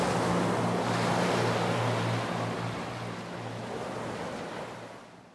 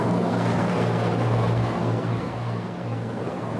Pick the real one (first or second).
first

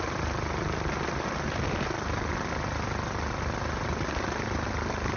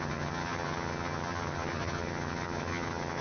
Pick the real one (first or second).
first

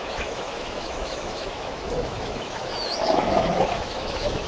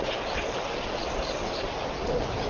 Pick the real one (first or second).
second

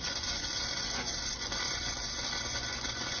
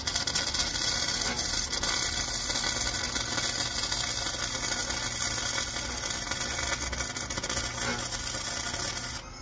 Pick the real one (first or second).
second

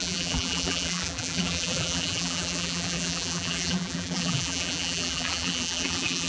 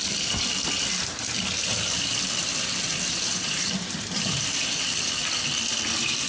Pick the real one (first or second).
second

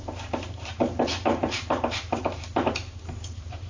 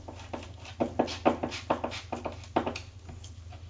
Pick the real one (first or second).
second